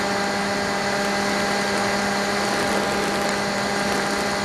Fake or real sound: real